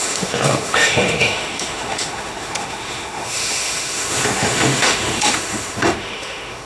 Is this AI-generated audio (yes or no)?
yes